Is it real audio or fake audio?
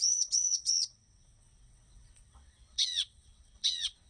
fake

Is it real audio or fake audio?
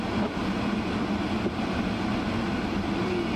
real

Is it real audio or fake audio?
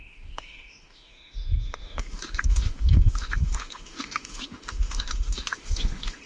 fake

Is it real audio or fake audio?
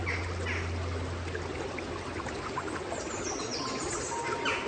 real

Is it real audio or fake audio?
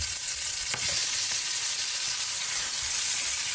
fake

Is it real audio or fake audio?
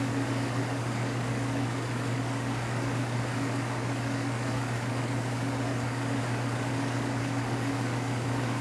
fake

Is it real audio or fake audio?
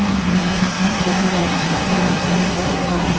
fake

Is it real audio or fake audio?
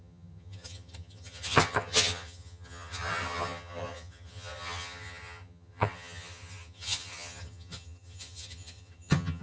fake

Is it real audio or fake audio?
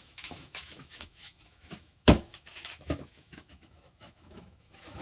fake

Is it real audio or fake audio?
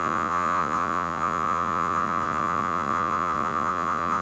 fake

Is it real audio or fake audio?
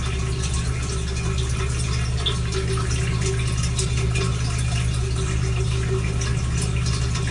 real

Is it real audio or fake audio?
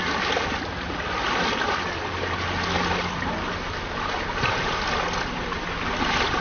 real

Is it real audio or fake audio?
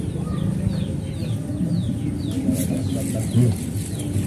real